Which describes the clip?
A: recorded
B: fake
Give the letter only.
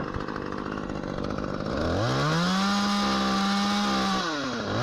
A